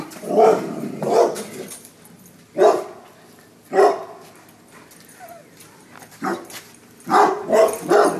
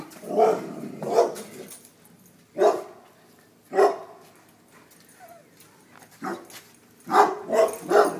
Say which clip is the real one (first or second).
second